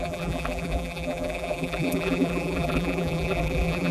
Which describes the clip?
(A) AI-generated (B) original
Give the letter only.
A